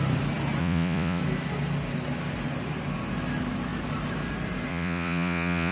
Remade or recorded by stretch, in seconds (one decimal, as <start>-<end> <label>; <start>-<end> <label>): 0.0-0.6 recorded; 0.6-1.2 remade; 1.2-4.7 recorded; 4.7-5.7 remade